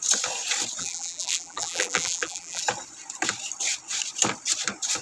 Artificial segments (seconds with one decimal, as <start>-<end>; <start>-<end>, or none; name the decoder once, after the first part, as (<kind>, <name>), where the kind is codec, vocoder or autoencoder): 0.8-2.6 (vocoder, BigVGAN v2)